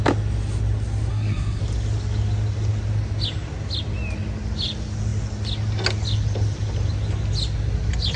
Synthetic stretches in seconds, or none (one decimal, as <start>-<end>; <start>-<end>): 1.1-1.6